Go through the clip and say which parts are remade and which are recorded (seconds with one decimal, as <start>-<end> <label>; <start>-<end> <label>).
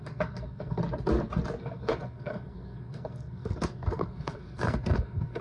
0.0-0.8 remade; 0.8-1.6 recorded; 1.6-5.4 remade